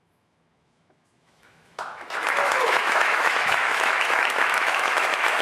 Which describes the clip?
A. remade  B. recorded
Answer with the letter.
A